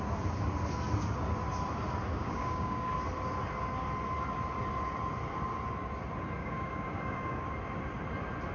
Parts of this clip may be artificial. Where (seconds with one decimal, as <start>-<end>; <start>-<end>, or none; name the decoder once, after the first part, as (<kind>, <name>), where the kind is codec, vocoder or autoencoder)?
2.1-2.9 (codec, DAC); 6.4-7.4